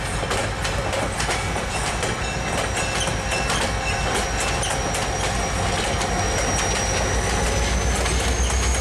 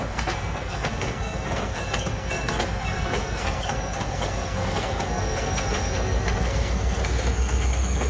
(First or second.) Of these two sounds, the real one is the first